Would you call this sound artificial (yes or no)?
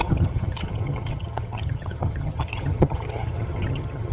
yes